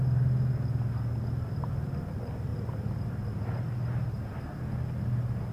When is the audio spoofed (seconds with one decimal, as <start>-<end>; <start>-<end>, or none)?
2.5-3.1